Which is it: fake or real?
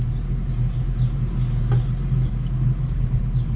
real